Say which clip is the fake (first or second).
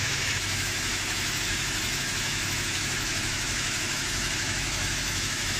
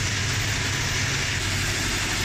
first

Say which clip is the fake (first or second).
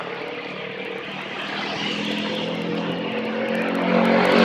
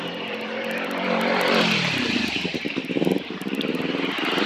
second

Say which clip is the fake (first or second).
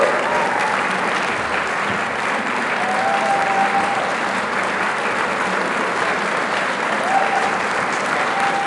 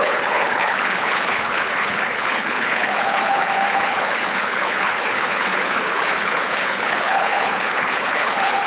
second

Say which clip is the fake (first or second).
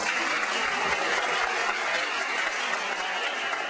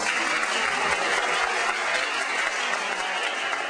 first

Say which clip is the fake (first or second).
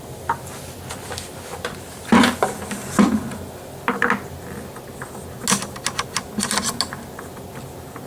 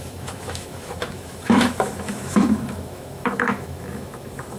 second